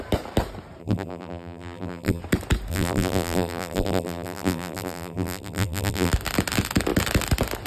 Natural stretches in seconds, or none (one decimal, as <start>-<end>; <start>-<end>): 0.0-0.8; 2.2-2.7; 6.1-7.7